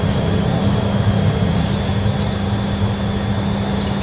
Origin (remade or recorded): recorded